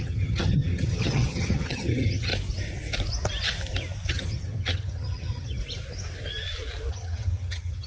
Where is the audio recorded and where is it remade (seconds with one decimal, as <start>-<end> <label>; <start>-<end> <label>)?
0.0-2.3 remade; 2.3-4.1 recorded; 4.1-5.6 remade; 5.6-6.9 recorded; 6.9-7.9 remade